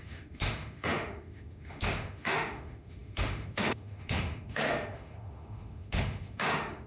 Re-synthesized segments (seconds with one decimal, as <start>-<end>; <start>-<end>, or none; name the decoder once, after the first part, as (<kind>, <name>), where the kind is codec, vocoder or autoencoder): 0.0-6.9 (autoencoder, DAC-VAE)